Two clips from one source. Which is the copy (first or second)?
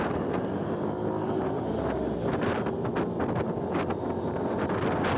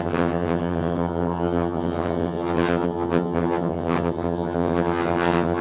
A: second